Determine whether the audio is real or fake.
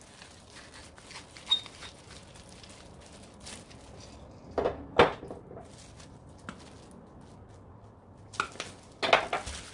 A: real